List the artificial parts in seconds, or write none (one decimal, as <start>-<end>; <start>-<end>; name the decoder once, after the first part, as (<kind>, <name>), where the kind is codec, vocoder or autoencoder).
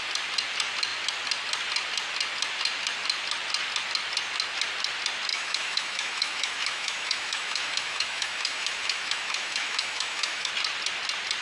5.3-10.5 (autoencoder, DAC-VAE)